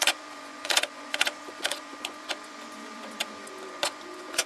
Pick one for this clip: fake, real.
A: fake